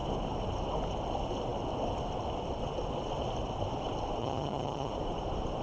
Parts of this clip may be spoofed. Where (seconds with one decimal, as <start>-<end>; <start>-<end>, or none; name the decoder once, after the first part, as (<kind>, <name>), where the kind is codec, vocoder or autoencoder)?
4.2-4.9 (vocoder, HiFi-GAN)